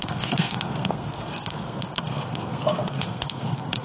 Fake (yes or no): yes